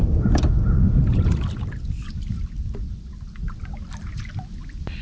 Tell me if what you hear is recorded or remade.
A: recorded